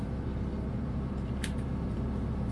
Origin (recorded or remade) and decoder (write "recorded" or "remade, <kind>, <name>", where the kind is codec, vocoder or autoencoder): remade, vocoder, BigVGAN v2